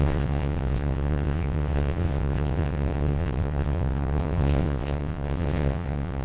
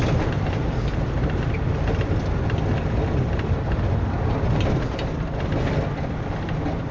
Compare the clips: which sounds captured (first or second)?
second